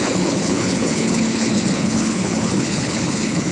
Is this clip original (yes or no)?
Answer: no